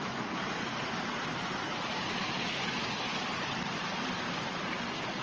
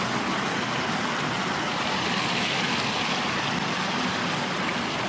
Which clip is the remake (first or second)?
first